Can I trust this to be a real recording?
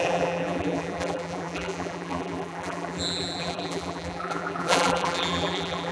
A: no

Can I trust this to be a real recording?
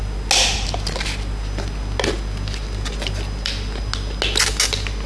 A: yes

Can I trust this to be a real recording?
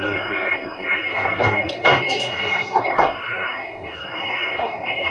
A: no